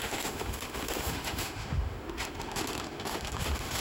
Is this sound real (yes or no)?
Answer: no